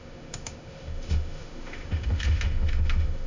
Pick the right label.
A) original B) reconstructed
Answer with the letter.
B